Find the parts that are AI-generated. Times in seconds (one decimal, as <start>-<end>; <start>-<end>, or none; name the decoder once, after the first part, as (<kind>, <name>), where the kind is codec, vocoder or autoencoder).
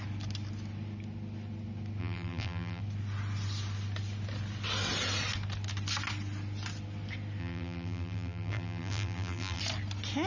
2.0-2.8 (vocoder, BigVGAN v2); 7.4-9.6